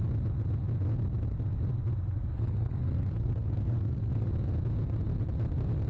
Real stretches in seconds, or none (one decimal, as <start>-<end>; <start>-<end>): 0.0-2.3; 4.3-5.9